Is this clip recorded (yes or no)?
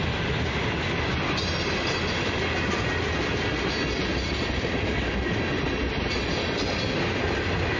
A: yes